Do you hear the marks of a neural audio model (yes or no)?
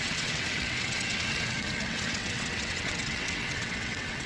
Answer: yes